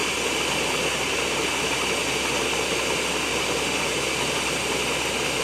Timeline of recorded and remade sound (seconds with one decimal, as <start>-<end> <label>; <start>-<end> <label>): 0.0-5.4 recorded